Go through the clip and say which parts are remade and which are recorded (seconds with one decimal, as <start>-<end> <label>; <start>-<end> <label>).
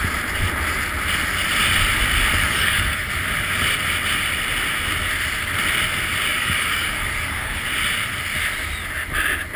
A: 0.0-2.4 recorded; 2.4-3.1 remade; 3.1-6.3 recorded; 6.3-7.6 remade; 7.6-9.6 recorded